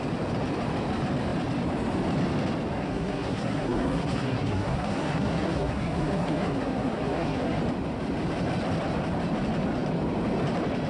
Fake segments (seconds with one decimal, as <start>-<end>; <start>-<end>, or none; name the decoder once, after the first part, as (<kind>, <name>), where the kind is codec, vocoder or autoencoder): 2.8-7.6 (codec, SNAC)